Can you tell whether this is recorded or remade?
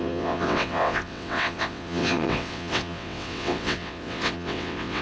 remade